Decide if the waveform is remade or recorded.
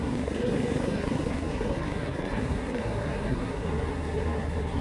remade